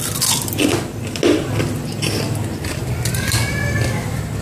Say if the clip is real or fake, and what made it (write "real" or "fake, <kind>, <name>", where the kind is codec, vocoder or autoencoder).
real